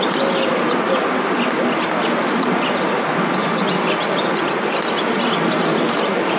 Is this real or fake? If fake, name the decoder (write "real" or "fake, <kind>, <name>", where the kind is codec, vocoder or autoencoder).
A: real